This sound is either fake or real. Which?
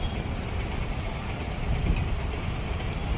real